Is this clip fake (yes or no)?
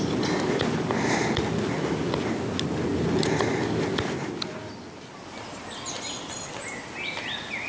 no